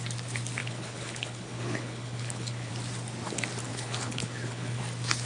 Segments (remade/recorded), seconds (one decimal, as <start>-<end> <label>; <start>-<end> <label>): 0.0-0.6 recorded; 0.6-2.7 remade; 2.7-3.7 recorded; 3.7-4.8 remade; 4.8-5.3 recorded